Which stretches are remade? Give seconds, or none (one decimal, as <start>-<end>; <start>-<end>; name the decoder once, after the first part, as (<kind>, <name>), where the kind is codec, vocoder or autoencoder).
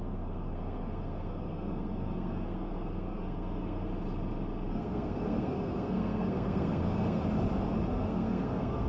0.0-3.9 (codec, SNAC); 4.7-7.2; 8.0-8.9